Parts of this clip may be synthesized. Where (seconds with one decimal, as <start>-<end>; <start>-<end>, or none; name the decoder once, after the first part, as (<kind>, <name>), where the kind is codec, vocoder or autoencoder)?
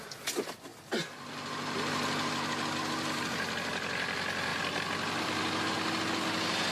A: none